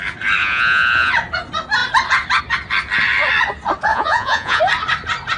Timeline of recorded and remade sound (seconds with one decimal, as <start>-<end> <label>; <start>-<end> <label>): 0.0-0.4 recorded; 0.4-1.1 remade; 1.1-3.9 recorded; 3.9-4.6 remade; 4.6-5.4 recorded